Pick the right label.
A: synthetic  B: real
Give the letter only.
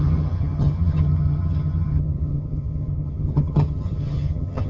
A